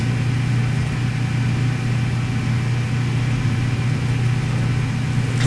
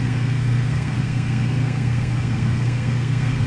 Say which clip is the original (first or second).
first